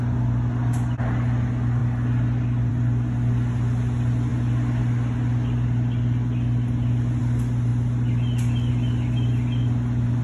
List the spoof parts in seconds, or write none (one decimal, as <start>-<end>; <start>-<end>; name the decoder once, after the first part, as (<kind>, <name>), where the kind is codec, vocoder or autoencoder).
none